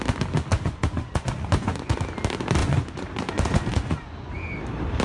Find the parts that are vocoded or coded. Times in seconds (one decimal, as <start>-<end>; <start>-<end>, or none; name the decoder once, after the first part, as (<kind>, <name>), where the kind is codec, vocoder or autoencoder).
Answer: 0.5-2.0 (vocoder, Vocos); 2.6-4.3